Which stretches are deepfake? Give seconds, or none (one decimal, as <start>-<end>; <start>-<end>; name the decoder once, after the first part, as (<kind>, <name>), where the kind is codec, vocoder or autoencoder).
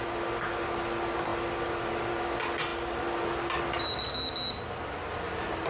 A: 1.3-2.1 (vocoder, BigVGAN v2); 2.7-4.1